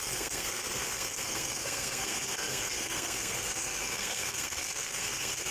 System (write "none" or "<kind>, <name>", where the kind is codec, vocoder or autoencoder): codec, SNAC